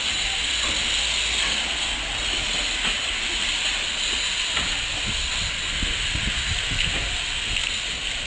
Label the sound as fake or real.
real